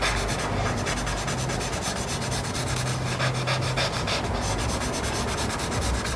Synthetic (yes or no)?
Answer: no